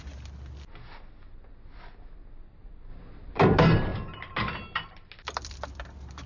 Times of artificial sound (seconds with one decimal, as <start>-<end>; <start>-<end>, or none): none